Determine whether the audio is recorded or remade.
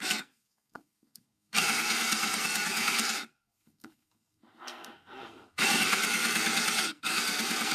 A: remade